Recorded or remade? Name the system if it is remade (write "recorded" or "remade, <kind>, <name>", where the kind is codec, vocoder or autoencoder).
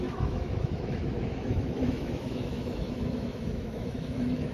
remade, autoencoder, DAC-VAE